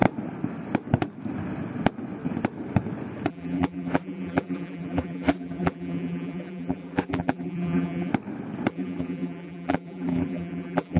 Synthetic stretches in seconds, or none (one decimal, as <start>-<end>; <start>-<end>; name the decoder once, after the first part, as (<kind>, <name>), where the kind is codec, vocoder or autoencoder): 3.3-8.1 (vocoder, BigVGAN v2); 8.7-11.0